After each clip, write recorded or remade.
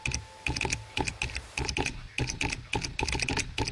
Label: recorded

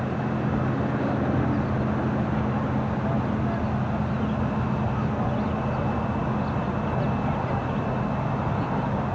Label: recorded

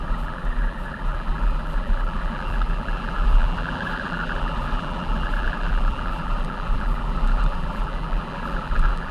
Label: remade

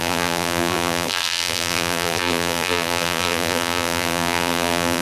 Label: remade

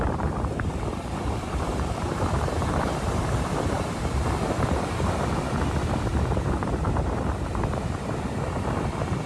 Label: remade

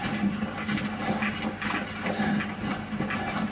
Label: recorded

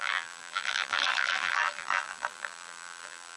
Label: remade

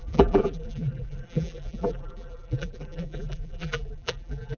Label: remade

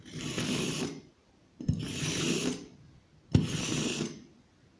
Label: recorded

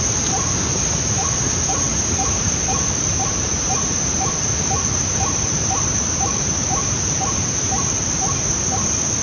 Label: remade